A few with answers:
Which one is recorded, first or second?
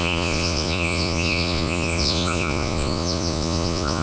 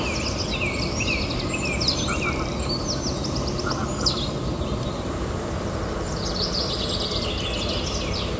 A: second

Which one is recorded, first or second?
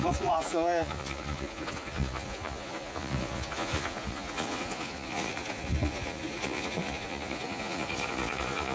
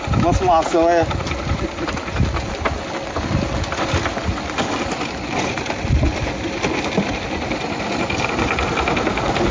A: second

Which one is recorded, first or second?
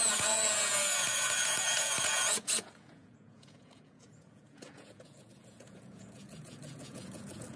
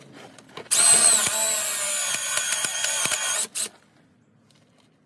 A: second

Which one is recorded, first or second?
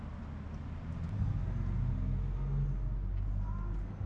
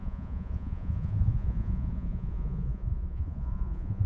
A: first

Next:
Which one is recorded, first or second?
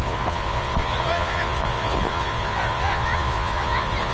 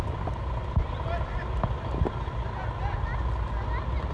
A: second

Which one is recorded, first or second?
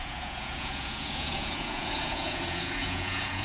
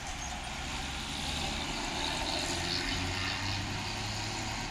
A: second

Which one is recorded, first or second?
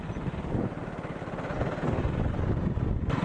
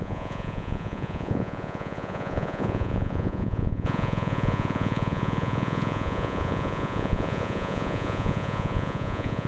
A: first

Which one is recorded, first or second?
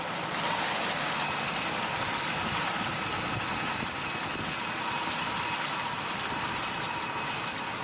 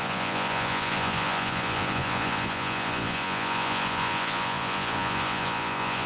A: first